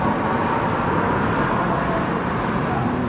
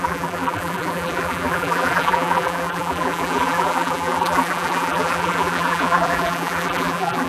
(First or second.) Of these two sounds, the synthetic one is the second